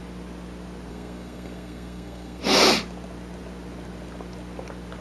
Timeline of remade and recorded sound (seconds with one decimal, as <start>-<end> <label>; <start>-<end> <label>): 0.0-0.9 recorded; 0.9-2.4 remade; 2.4-5.0 recorded